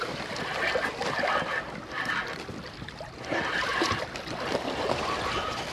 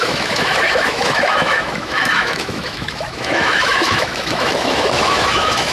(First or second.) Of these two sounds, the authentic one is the first